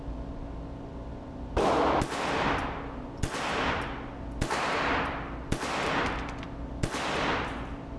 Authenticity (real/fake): real